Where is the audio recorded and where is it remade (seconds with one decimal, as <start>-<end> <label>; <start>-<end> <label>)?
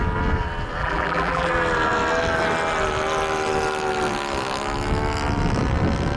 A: 0.0-0.8 recorded; 0.8-1.5 remade; 1.5-6.2 recorded